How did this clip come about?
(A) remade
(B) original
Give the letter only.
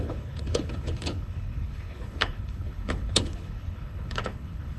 A